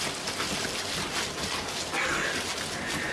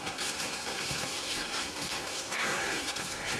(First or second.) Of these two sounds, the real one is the first